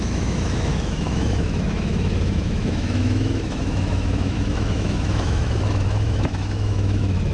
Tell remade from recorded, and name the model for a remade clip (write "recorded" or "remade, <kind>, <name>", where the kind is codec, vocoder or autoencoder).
remade, autoencoder, DAC-VAE